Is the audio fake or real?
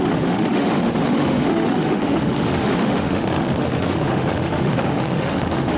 fake